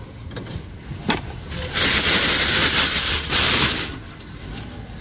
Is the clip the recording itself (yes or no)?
yes